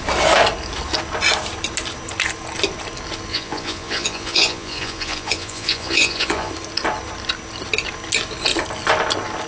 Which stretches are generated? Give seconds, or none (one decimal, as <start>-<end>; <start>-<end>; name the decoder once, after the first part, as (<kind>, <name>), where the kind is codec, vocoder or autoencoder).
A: 3.3-6.5 (vocoder, Vocos)